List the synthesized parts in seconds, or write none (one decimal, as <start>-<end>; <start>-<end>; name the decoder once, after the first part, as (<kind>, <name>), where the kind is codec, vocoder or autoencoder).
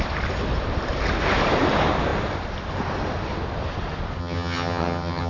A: 4.2-5.3 (vocoder, HiFi-GAN)